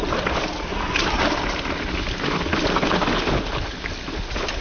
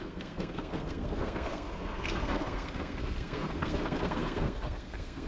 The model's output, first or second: second